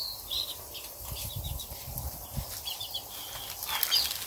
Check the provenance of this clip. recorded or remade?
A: recorded